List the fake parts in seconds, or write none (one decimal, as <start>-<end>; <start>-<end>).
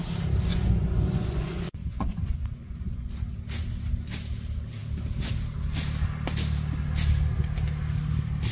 0.5-3.1